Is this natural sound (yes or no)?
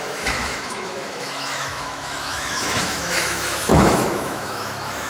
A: no